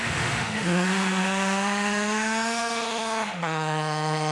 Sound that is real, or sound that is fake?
fake